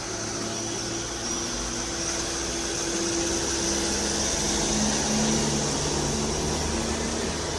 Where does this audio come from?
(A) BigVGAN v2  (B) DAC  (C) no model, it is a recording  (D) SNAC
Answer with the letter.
C